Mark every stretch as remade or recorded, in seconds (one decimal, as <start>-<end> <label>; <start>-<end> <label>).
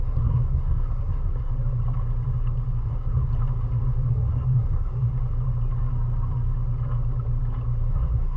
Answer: 0.0-1.5 remade; 1.5-2.8 recorded; 2.8-3.3 remade; 3.3-4.1 recorded; 4.1-5.1 remade; 5.1-7.9 recorded; 7.9-8.4 remade